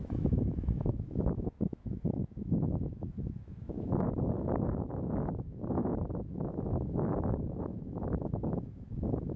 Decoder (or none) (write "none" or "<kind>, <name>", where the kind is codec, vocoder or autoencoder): autoencoder, DAC-VAE